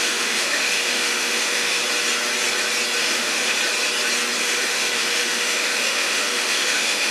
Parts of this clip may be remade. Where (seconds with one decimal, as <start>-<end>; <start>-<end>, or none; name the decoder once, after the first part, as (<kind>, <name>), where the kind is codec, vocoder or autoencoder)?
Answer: 0.0-1.8 (autoencoder, DAC-VAE); 3.0-3.6; 4.4-7.1